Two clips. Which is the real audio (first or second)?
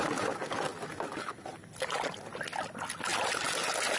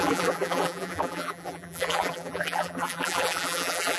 first